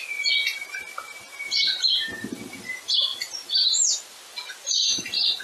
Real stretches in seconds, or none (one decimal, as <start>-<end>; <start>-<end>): 0.0-3.1; 4.7-5.4